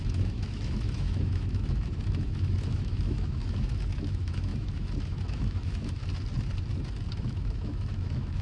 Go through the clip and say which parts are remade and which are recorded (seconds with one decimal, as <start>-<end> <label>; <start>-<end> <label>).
0.0-6.0 remade; 6.0-7.1 recorded; 7.1-8.4 remade